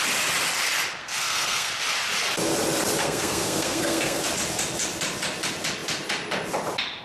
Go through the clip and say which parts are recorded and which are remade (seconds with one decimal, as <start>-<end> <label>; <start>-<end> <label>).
0.0-1.0 recorded; 1.0-1.7 remade; 1.7-3.0 recorded; 3.0-4.2 remade; 4.2-7.0 recorded